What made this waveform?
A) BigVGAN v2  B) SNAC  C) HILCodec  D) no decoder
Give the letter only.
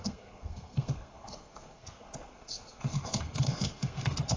B